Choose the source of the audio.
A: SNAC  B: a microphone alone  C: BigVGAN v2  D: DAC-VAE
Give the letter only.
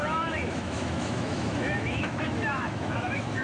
D